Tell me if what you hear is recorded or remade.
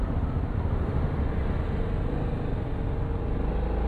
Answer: recorded